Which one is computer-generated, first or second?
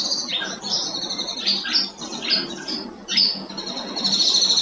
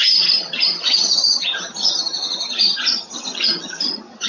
second